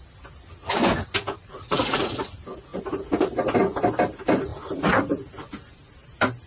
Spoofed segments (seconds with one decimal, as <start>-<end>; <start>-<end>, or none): 1.4-2.2